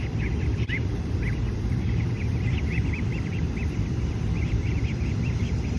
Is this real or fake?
fake